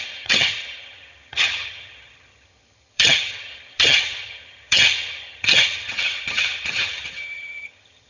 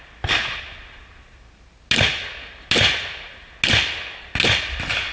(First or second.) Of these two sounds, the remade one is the first